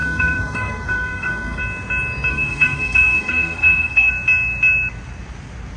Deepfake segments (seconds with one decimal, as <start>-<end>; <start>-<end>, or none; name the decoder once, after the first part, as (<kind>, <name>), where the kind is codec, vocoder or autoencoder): 0.0-1.6 (codec, SNAC); 2.3-4.1